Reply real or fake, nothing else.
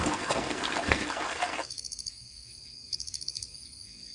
fake